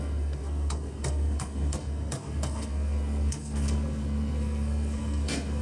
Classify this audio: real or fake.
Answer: fake